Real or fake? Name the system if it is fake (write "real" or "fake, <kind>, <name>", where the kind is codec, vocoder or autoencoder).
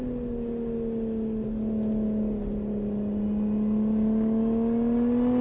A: real